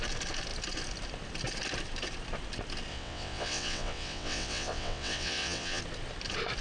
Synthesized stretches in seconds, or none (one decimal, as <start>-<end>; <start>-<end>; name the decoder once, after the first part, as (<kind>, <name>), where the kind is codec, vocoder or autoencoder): 2.9-5.8 (vocoder, WaveNeXt)